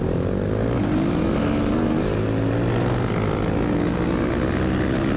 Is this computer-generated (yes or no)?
no